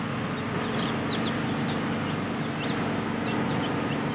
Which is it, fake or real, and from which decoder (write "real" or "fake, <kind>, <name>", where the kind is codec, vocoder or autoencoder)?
real